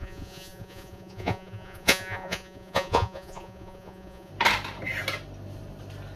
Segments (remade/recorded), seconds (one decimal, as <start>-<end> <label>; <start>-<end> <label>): 0.0-4.3 remade; 4.3-6.2 recorded